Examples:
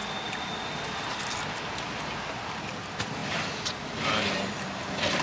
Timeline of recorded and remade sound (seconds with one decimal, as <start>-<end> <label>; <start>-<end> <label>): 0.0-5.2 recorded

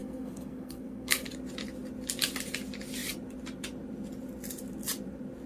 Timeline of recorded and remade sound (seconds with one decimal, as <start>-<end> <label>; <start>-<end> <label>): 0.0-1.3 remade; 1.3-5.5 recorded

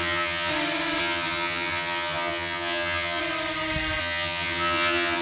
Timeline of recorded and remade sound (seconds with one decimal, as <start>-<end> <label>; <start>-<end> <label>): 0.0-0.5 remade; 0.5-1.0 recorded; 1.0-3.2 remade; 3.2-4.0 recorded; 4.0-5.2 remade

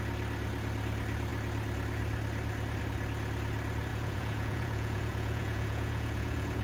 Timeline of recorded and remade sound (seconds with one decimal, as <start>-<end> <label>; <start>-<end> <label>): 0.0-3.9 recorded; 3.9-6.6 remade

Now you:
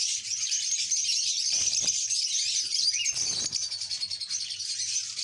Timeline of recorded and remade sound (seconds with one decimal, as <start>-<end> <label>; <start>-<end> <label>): 0.0-5.2 recorded

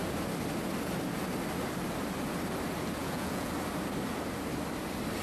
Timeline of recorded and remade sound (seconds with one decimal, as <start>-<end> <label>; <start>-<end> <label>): 0.0-3.0 recorded; 3.0-3.5 remade; 3.5-5.2 recorded

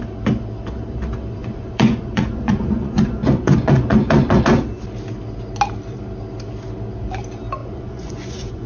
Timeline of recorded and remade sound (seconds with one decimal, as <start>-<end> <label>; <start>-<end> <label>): 0.0-1.4 recorded; 1.4-4.4 remade; 4.4-7.6 recorded; 7.6-8.7 remade

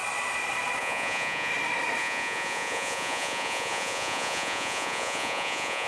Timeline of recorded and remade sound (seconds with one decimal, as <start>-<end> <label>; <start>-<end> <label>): 0.0-0.8 recorded; 0.8-1.5 remade; 1.5-2.0 recorded; 2.0-5.9 remade